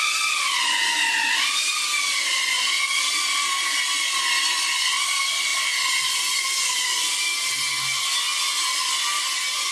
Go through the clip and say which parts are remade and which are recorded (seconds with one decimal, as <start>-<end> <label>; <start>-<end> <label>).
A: 0.0-9.7 recorded